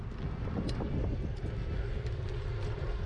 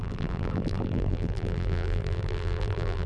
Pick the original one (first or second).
first